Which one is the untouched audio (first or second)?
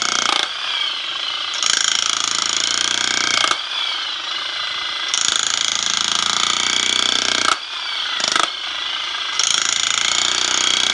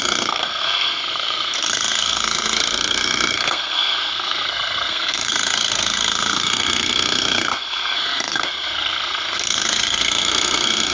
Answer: first